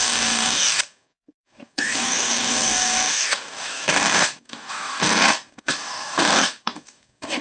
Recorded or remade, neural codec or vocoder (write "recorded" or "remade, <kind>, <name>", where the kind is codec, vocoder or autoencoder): remade, codec, DAC